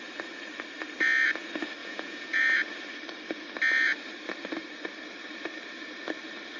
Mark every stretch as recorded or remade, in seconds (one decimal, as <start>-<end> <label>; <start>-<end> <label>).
0.0-1.8 recorded; 1.8-2.4 remade; 2.4-6.6 recorded

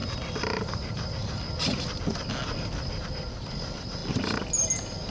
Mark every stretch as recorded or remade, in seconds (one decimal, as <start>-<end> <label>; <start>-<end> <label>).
0.0-5.1 recorded

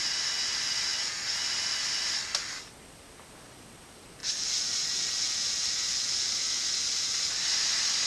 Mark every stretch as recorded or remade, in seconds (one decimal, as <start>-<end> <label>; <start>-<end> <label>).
0.0-8.1 recorded

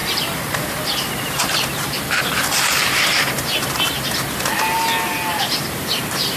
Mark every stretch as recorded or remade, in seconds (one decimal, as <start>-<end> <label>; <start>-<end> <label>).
0.0-4.9 remade; 4.9-6.4 recorded

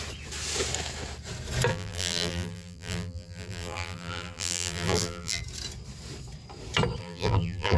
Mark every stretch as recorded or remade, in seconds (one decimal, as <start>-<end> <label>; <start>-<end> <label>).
0.0-1.7 recorded; 1.7-5.4 remade; 5.4-7.0 recorded; 7.0-7.8 remade